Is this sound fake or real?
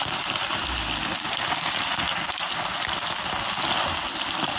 real